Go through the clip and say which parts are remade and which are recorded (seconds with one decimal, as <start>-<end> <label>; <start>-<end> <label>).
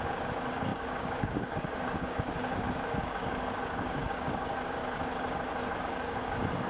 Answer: 0.0-4.8 remade; 4.8-5.8 recorded; 5.8-6.7 remade